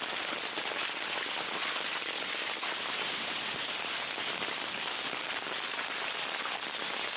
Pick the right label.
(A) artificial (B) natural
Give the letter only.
B